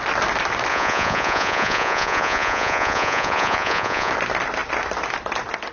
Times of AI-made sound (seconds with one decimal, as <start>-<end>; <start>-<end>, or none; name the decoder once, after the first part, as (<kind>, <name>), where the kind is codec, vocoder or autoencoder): 0.7-4.1 (vocoder, Vocos)